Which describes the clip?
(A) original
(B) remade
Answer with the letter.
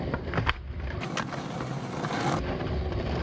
A